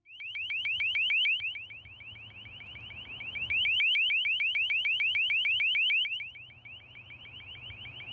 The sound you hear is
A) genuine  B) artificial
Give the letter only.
A